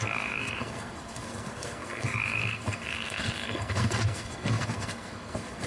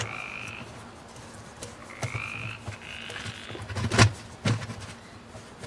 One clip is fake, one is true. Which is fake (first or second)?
first